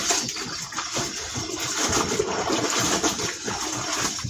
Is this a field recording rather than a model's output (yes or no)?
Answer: yes